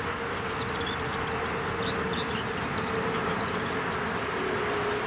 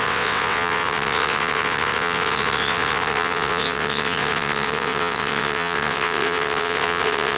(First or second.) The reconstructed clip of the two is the second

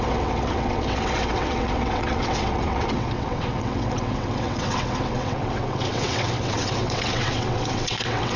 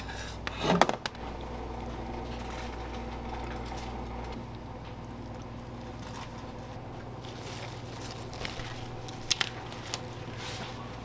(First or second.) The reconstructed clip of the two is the first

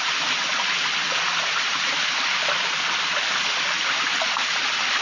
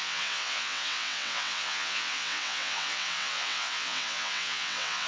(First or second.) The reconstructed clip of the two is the second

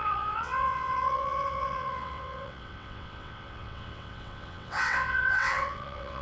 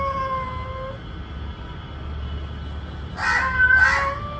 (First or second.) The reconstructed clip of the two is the first